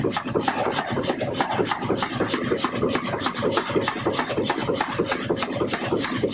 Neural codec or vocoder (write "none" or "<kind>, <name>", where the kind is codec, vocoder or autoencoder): none